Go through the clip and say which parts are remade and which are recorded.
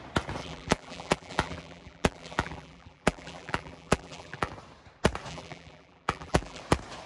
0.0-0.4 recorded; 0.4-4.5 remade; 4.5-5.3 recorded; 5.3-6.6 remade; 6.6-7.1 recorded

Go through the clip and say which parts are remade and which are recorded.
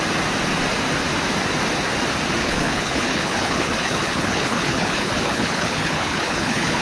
0.0-2.4 recorded; 2.4-6.8 remade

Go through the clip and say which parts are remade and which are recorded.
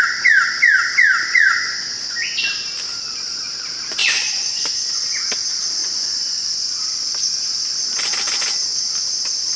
0.0-1.3 recorded; 1.3-2.3 remade; 2.3-4.0 recorded; 4.0-5.2 remade; 5.2-5.8 recorded; 5.8-6.7 remade; 6.7-9.6 recorded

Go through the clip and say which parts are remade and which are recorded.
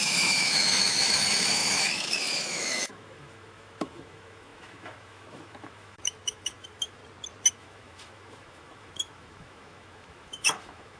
0.0-7.0 remade; 7.0-7.5 recorded; 7.5-11.0 remade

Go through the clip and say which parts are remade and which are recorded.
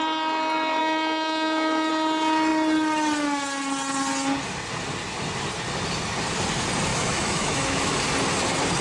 0.0-0.8 recorded; 0.8-1.9 remade; 1.9-6.9 recorded; 6.9-8.0 remade; 8.0-8.8 recorded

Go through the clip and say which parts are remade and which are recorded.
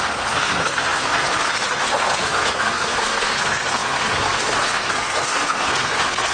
0.0-6.3 remade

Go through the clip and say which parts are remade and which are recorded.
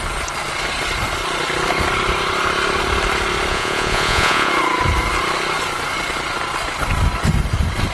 0.0-3.5 recorded; 3.5-4.5 remade; 4.5-7.9 recorded